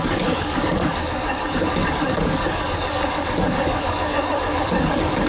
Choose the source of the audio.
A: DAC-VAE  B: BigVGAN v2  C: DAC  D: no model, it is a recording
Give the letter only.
C